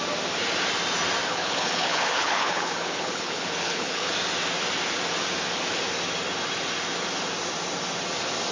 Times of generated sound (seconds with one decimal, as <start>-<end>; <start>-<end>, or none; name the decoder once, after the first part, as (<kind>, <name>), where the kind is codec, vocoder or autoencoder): 1.3-4.1 (codec, HILCodec)